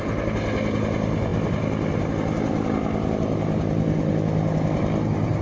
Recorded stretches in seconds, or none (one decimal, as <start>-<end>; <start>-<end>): 0.0-5.4